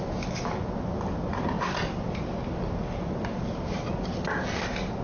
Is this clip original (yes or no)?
yes